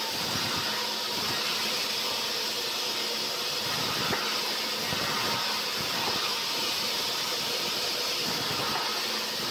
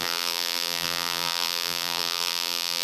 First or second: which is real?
first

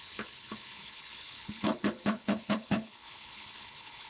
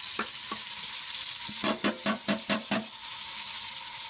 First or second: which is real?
second